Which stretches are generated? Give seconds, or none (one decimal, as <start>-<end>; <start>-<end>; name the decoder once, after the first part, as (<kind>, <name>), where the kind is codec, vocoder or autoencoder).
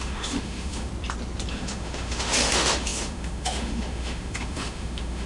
0.0-0.9 (autoencoder, DAC-VAE); 1.5-5.3